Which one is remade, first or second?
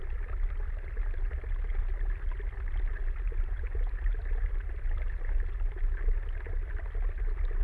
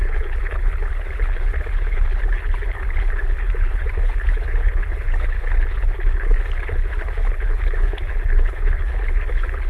second